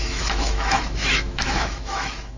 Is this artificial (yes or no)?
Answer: yes